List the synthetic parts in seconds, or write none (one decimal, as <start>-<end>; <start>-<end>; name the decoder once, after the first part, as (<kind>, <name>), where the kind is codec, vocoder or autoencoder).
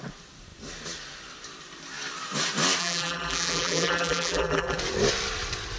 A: 2.8-4.8 (vocoder, BigVGAN v2)